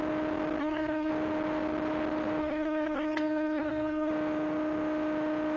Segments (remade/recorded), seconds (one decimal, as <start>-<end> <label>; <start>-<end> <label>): 0.0-0.6 recorded; 0.6-1.1 remade; 1.1-2.4 recorded; 2.4-4.1 remade; 4.1-5.6 recorded